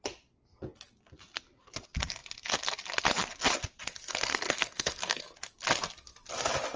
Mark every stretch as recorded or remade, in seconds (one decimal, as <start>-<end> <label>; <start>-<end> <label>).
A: 0.0-4.3 recorded; 4.3-5.2 remade; 5.2-6.8 recorded